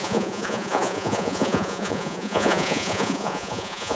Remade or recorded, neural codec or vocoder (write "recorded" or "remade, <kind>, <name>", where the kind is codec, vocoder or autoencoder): remade, vocoder, Vocos